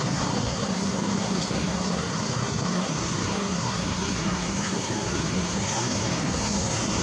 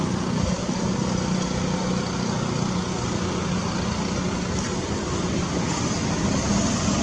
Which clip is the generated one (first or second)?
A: first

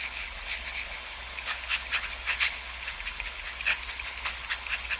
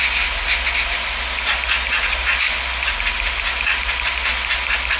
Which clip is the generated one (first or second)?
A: first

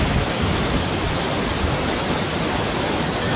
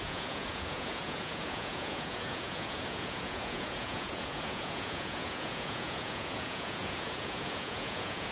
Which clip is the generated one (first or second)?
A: second